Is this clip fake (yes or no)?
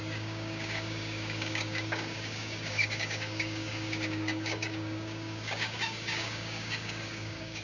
yes